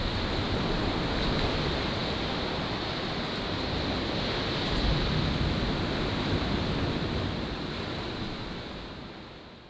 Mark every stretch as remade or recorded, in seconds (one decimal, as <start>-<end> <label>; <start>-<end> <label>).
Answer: 0.0-9.7 recorded